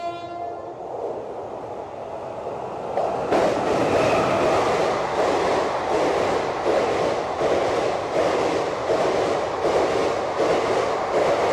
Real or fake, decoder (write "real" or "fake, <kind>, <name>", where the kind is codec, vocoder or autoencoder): real